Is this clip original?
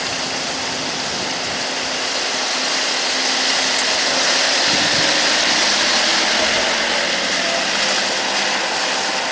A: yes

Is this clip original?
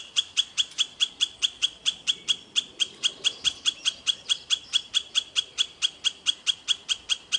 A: yes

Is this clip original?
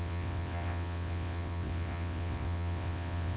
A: no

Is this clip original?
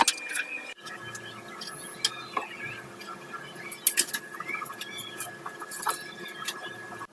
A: yes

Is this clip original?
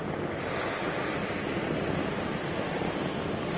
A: yes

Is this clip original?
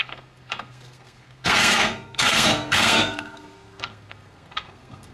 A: no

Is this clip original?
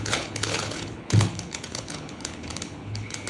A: no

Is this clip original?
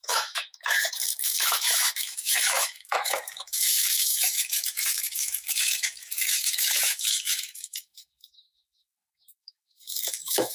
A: no